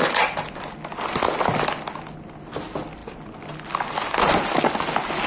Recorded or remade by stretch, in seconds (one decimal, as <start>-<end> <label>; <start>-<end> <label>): 0.0-5.3 recorded